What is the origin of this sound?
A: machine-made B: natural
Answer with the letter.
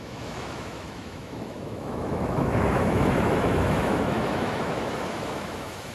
A